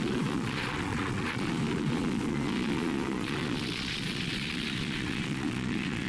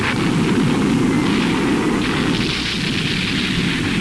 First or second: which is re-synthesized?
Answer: first